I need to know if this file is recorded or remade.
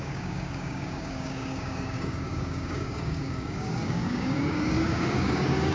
remade